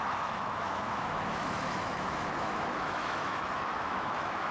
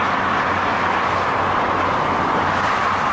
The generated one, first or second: first